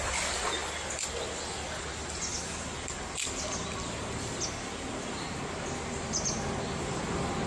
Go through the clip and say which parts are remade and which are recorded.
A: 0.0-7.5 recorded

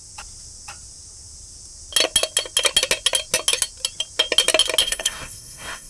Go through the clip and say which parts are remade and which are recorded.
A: 0.0-4.8 recorded; 4.8-5.9 remade